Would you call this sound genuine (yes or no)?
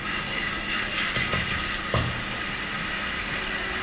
yes